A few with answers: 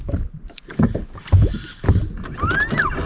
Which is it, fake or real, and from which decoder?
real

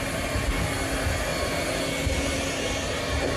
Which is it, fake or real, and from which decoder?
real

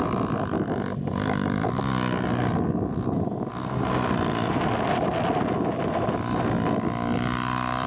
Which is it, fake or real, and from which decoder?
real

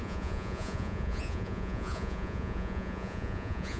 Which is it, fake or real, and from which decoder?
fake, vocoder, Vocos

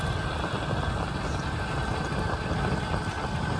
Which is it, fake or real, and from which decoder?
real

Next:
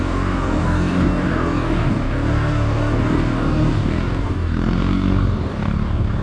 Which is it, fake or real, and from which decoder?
fake, codec, DAC